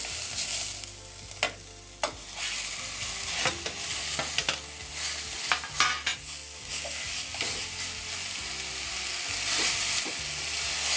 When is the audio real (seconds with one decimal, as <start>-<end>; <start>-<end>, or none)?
0.0-11.0